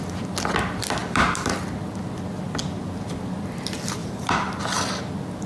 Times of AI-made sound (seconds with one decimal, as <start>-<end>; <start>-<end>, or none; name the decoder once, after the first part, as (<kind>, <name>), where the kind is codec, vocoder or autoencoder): 1.0-1.7 (vocoder, BigVGAN v2); 4.0-4.6